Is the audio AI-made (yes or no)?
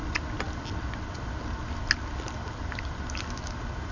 no